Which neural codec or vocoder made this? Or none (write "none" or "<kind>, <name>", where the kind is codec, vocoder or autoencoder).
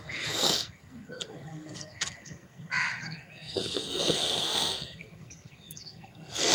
codec, SNAC